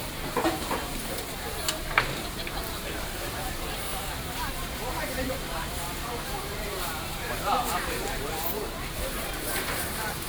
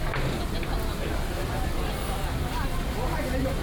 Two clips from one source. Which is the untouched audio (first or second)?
second